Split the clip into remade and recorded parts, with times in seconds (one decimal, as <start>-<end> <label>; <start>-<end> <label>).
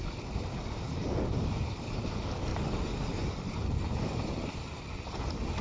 0.0-5.6 recorded